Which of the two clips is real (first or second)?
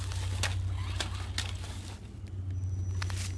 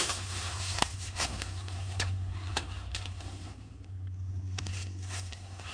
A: first